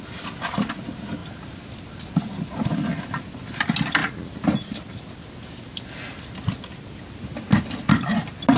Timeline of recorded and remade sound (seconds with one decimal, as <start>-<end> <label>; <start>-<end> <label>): 0.0-8.6 recorded